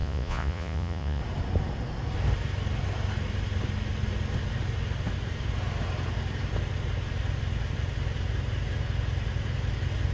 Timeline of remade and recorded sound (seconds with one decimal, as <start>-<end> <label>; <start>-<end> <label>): 0.0-1.2 remade; 1.2-10.1 recorded